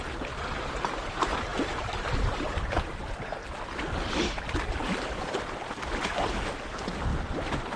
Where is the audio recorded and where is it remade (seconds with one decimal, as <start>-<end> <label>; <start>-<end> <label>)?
0.0-1.5 recorded; 1.5-5.8 remade; 5.8-7.1 recorded; 7.1-7.8 remade